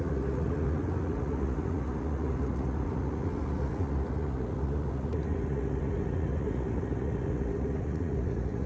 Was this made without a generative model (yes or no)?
no